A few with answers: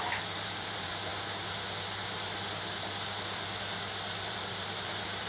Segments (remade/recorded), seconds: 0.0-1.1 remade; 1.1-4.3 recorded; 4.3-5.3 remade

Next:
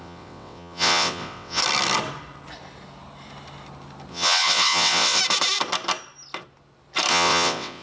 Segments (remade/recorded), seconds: 0.0-1.6 remade; 1.6-4.1 recorded; 4.1-5.2 remade; 5.2-7.1 recorded; 7.1-7.8 remade